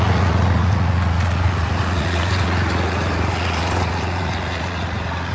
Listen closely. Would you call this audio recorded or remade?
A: remade